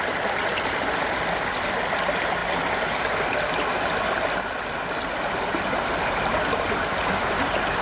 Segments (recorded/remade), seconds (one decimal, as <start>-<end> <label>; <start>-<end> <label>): 0.0-7.8 recorded